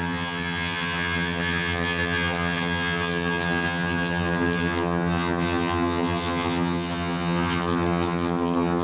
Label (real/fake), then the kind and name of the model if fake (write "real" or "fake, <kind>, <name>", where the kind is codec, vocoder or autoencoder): fake, vocoder, HiFi-GAN